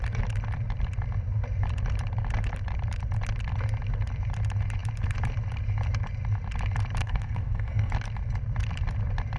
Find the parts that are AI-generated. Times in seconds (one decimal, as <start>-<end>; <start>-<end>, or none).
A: 7.0-7.9